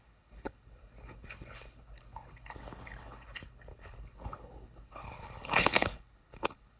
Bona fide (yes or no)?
no